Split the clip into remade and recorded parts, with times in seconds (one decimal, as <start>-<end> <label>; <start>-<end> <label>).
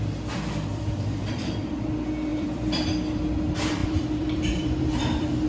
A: 0.0-0.7 recorded; 0.7-1.9 remade; 1.9-2.3 recorded; 2.3-2.9 remade; 2.9-3.8 recorded; 3.8-5.5 remade